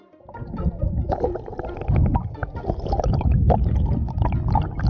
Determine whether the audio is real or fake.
real